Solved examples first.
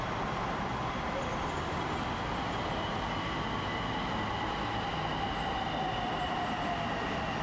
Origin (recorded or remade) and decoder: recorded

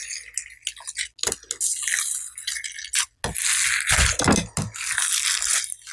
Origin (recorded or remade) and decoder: recorded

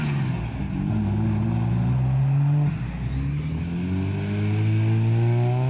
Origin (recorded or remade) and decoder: recorded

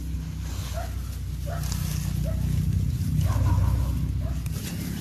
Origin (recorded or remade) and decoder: recorded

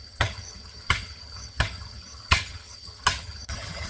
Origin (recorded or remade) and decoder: remade, vocoder, HiFi-GAN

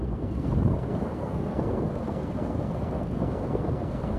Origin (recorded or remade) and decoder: remade, codec, SNAC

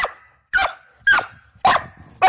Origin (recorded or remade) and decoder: recorded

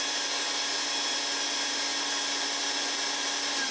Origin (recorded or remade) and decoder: recorded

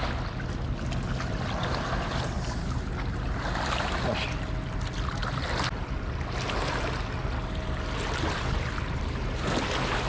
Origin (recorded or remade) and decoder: recorded